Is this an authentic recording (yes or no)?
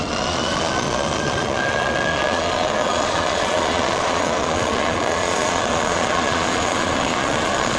no